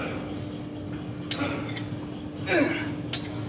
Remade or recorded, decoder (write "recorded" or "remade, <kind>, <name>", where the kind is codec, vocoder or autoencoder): recorded